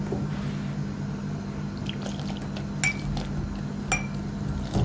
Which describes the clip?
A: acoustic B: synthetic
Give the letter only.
A